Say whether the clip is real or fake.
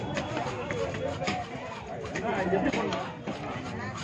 real